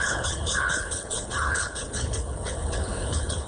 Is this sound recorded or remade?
remade